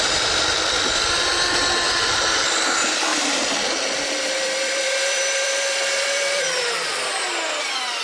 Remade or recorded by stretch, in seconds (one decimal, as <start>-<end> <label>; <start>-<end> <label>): 0.0-3.1 recorded; 3.1-6.4 remade; 6.4-8.0 recorded